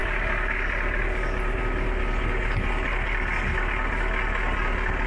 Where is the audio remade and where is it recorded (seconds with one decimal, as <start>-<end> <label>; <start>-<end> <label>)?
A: 0.0-5.1 recorded